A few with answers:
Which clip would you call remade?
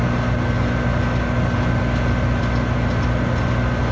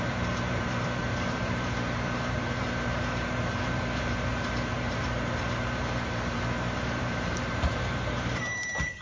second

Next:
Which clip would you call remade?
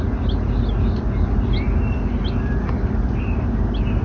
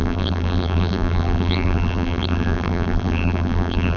second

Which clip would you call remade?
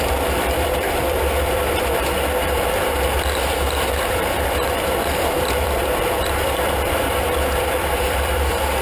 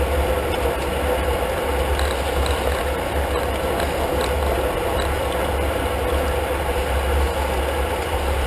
first